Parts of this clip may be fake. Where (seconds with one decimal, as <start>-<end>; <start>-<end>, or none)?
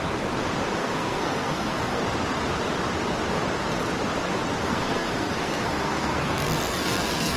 0.8-2.0; 4.6-7.4